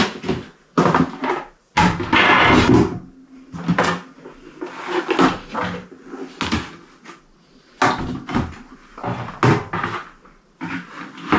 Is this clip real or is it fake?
real